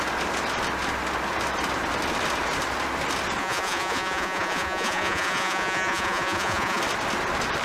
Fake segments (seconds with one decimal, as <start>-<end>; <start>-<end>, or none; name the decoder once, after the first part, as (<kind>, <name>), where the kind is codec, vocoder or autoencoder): 3.4-6.8 (vocoder, Vocos)